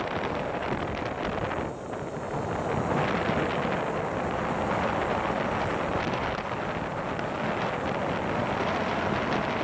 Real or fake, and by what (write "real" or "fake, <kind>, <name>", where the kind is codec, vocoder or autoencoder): real